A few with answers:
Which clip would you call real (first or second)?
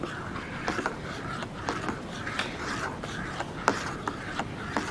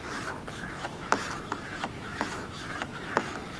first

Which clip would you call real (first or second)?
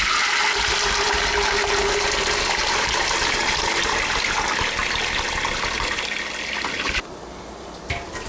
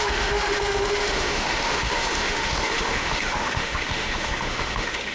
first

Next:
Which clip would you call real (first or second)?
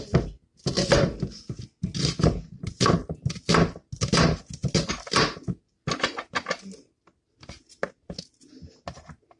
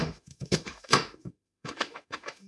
first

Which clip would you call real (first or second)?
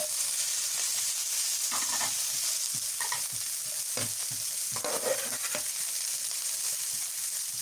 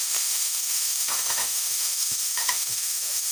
first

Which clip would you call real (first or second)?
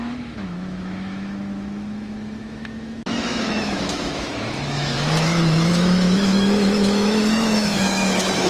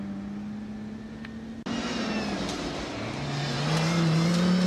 second